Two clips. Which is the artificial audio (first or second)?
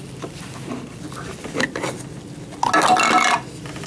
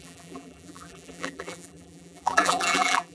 second